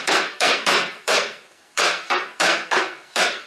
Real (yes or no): no